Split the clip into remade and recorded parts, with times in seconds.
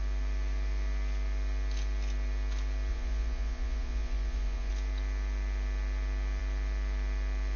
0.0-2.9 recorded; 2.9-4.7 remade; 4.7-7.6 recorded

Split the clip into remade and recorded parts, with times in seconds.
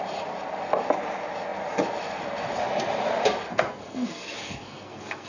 0.0-3.5 recorded; 3.5-5.3 remade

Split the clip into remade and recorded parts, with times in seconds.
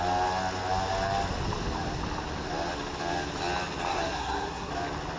0.0-3.9 recorded; 3.9-4.7 remade; 4.7-5.2 recorded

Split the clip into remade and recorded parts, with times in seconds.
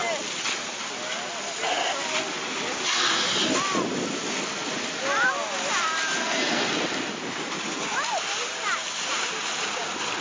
0.0-6.2 recorded; 6.2-6.7 remade; 6.7-10.2 recorded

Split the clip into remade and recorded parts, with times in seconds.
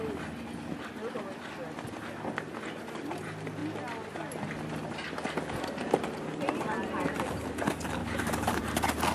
0.0-8.0 recorded; 8.0-8.6 remade; 8.6-9.1 recorded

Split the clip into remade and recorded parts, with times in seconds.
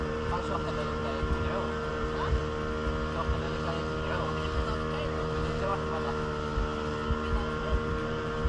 0.0-1.0 remade; 1.0-1.9 recorded; 1.9-2.4 remade; 2.4-5.2 recorded; 5.2-5.7 remade; 5.7-7.6 recorded; 7.6-8.5 remade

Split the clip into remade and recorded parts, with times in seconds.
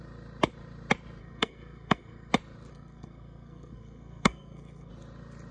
0.0-1.2 recorded; 1.2-2.3 remade; 2.3-2.7 recorded; 2.7-4.9 remade; 4.9-5.5 recorded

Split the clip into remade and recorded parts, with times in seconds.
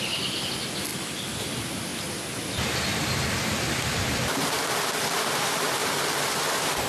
0.0-6.9 recorded